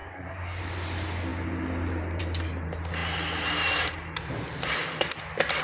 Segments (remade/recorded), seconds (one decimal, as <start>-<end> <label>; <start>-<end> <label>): 0.0-0.6 remade; 0.6-5.6 recorded